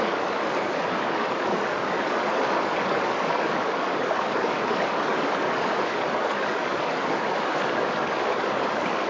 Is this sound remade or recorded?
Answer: remade